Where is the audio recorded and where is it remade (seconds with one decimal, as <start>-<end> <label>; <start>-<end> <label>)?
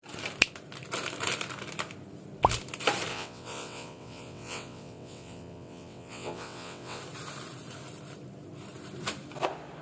0.0-3.1 recorded; 3.1-7.0 remade; 7.0-9.8 recorded